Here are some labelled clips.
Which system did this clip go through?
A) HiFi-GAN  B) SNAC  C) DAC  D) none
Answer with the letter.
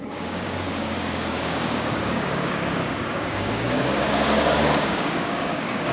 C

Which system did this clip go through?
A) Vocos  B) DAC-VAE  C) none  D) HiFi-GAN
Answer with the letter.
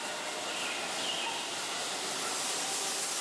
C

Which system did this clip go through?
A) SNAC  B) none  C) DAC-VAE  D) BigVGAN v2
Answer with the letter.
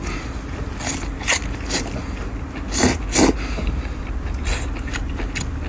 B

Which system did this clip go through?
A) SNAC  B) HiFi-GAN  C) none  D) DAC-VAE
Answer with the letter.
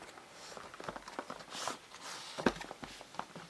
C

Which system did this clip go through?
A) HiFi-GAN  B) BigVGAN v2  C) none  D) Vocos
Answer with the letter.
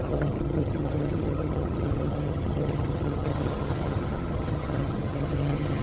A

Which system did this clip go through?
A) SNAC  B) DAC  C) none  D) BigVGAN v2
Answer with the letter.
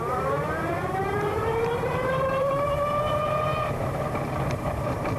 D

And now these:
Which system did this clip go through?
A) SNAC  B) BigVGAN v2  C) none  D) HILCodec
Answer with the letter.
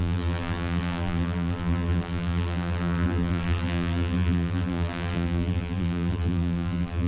B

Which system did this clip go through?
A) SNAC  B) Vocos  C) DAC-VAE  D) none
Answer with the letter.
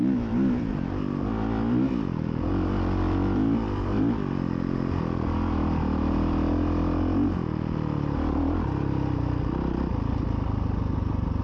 D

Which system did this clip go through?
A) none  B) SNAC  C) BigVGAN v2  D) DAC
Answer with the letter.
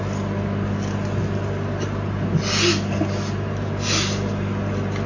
A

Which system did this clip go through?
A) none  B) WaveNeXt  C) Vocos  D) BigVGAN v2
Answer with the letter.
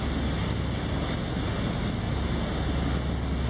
A